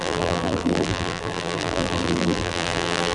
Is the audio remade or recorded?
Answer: remade